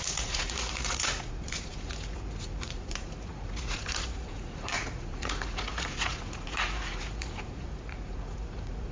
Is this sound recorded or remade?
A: remade